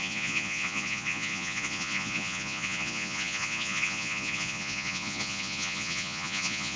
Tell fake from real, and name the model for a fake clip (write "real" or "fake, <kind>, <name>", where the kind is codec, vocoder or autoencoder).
fake, vocoder, Vocos